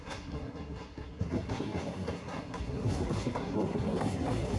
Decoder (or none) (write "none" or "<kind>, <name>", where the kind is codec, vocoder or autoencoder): codec, SNAC